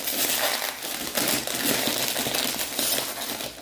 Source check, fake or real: real